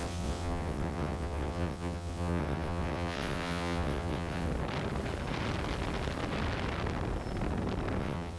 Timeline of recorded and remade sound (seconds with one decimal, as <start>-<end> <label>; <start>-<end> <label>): 0.0-4.5 remade; 4.5-8.0 recorded; 8.0-8.4 remade

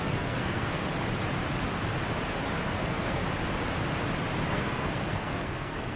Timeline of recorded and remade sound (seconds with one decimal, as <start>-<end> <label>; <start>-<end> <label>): 0.0-0.8 remade; 0.8-2.8 recorded; 2.8-3.2 remade; 3.2-4.5 recorded; 4.5-6.0 remade